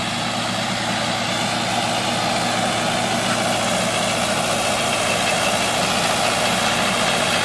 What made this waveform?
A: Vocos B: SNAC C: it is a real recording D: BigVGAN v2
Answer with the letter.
C